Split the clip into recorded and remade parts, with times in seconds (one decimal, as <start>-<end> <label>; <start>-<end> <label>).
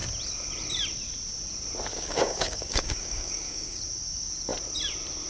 0.0-1.9 recorded; 1.9-3.8 remade; 3.8-5.3 recorded